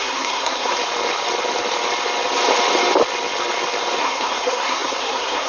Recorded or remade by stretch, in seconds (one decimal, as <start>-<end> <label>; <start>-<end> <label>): 0.0-0.7 remade; 0.7-4.0 recorded; 4.0-5.5 remade